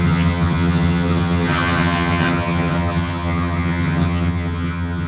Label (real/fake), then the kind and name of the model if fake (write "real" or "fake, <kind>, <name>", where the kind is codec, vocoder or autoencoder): fake, vocoder, HiFi-GAN